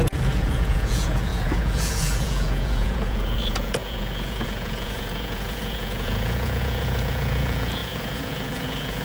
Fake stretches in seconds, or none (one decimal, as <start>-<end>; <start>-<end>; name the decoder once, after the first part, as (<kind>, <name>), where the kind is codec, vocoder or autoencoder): 0.0-9.0 (vocoder, Vocos)